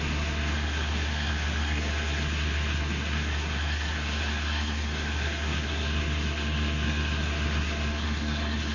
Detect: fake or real fake